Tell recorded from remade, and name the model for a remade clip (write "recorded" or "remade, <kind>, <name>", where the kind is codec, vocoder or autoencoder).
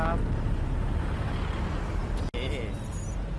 recorded